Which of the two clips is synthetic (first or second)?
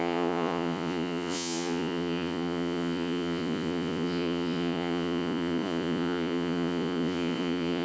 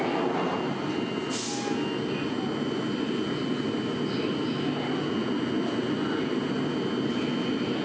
first